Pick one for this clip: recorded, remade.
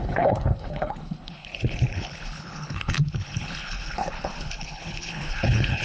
remade